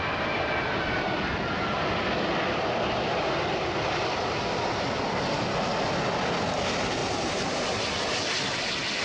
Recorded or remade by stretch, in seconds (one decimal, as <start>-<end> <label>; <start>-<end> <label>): 0.0-7.0 recorded; 7.0-7.6 remade; 7.6-9.0 recorded